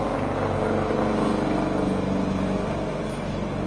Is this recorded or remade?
recorded